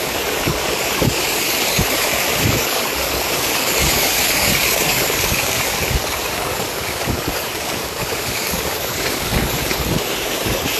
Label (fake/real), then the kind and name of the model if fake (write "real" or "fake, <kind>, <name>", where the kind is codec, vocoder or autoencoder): fake, codec, DAC